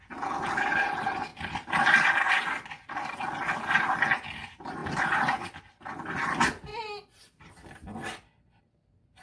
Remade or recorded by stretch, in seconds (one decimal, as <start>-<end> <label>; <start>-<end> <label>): 0.0-9.2 recorded